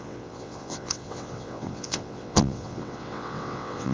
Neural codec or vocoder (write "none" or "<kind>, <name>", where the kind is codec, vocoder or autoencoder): vocoder, WaveNeXt